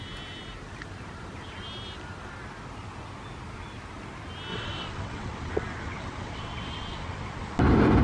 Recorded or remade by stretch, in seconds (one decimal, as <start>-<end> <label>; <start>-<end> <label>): 0.0-4.5 recorded; 4.5-7.6 remade; 7.6-8.0 recorded